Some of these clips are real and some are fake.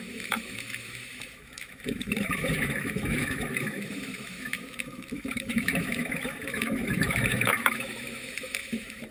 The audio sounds fake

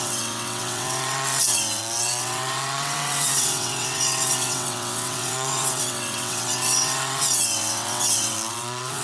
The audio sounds fake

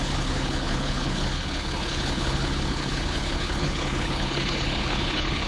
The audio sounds fake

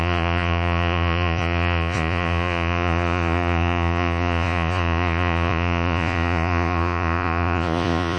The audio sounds fake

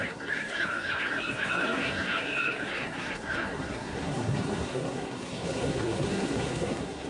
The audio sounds fake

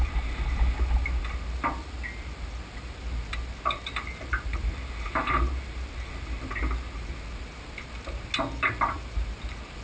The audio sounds real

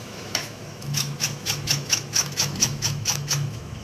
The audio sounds fake